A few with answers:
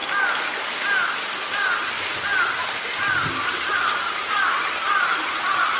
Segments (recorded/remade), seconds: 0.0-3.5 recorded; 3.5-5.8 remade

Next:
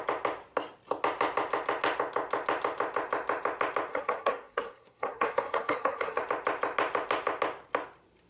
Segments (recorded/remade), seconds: 0.0-3.9 recorded; 3.9-6.2 remade; 6.2-8.3 recorded

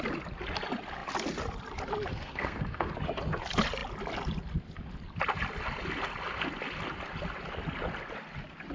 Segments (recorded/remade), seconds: 0.0-2.1 recorded; 2.1-2.9 remade; 2.9-8.7 recorded

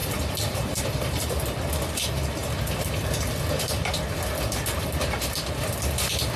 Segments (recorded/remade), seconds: 0.0-1.3 remade; 1.3-6.4 recorded

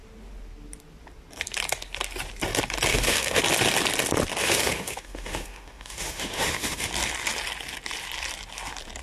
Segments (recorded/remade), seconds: 0.0-2.9 recorded; 2.9-3.4 remade; 3.4-4.4 recorded; 4.4-6.9 remade; 6.9-9.0 recorded

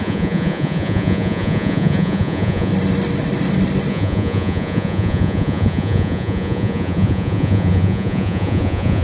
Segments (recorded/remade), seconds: 0.0-2.7 remade; 2.7-3.9 recorded; 3.9-9.0 remade